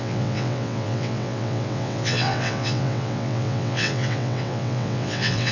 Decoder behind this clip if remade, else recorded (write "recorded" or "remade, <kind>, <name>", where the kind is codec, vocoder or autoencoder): remade, vocoder, WaveNeXt